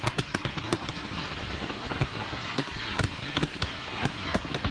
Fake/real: fake